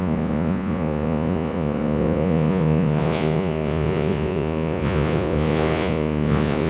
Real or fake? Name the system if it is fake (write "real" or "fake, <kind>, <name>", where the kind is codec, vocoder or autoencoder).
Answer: fake, vocoder, Vocos